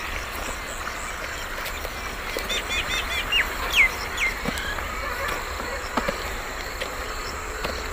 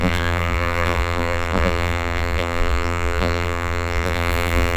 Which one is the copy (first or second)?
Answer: second